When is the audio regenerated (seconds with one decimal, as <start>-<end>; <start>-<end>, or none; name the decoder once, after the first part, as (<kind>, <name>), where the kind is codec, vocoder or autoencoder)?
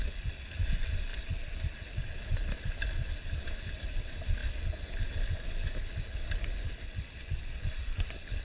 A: none